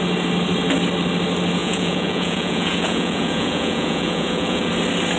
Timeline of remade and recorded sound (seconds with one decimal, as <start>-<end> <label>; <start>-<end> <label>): 0.0-1.6 recorded; 1.6-4.7 remade; 4.7-5.2 recorded